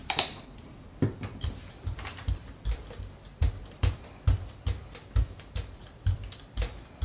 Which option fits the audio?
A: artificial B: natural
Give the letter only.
A